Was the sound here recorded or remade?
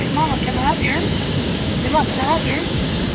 remade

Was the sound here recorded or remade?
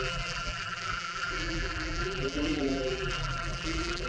remade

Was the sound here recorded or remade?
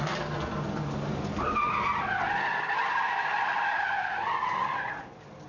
recorded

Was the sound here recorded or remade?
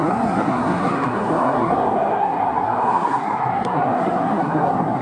remade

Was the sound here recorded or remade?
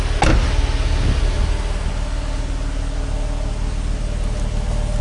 recorded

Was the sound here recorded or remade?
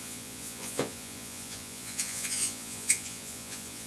remade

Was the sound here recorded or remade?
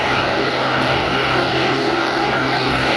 remade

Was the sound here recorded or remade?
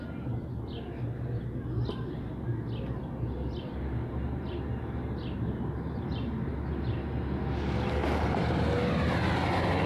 recorded